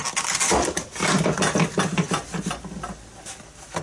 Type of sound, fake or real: real